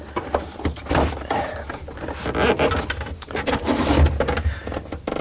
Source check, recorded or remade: recorded